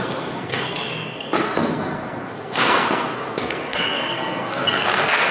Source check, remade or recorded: remade